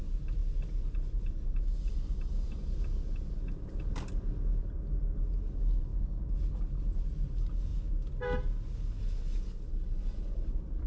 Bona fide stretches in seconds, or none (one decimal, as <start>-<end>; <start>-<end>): 0.0-9.7; 10.3-10.9